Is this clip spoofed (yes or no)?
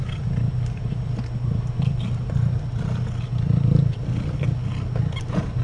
no